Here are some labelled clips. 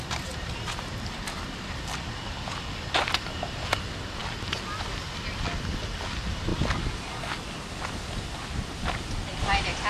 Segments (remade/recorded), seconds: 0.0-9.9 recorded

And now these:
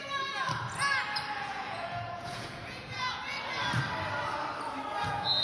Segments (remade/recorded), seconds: 0.0-1.4 recorded; 1.4-3.2 remade; 3.2-5.0 recorded; 5.0-5.4 remade

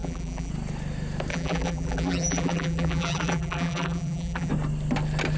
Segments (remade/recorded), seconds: 0.0-0.5 remade; 0.5-1.3 recorded; 1.3-4.5 remade; 4.5-5.4 recorded

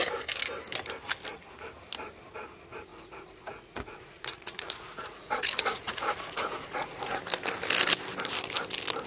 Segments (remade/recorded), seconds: 0.0-2.9 recorded; 2.9-7.2 remade; 7.2-9.1 recorded

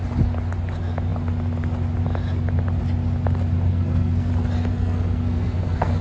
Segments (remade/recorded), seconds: 0.0-3.7 recorded; 3.7-4.3 remade; 4.3-4.7 recorded; 4.7-6.0 remade